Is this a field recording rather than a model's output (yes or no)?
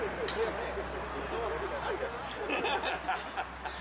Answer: yes